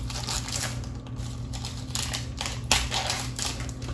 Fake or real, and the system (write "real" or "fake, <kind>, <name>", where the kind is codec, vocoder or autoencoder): real